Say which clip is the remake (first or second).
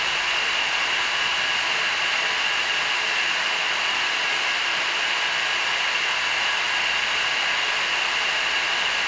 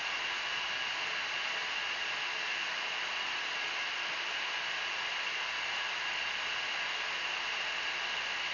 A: first